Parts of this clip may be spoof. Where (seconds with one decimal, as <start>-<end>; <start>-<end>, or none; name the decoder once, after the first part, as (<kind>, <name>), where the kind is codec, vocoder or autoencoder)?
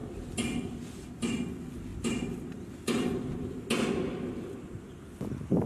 none